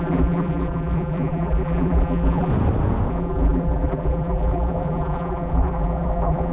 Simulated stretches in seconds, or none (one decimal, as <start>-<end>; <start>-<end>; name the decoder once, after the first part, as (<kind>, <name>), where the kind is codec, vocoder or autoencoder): 0.0-2.5 (vocoder, BigVGAN v2); 3.1-6.5